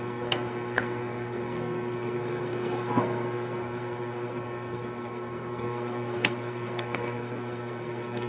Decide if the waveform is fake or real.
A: fake